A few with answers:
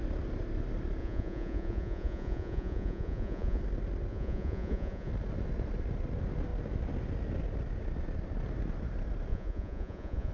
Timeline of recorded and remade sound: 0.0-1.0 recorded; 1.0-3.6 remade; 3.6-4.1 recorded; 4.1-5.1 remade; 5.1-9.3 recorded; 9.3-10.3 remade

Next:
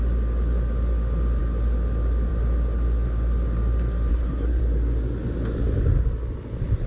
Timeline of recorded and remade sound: 0.0-4.1 recorded; 4.1-4.6 remade; 4.6-6.9 recorded

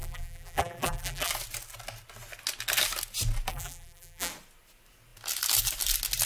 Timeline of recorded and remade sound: 0.0-1.3 remade; 1.3-3.5 recorded; 3.5-4.3 remade; 4.3-6.3 recorded